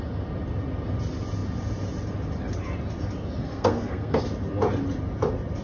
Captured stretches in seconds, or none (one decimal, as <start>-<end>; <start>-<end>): 0.0-3.4; 4.2-5.6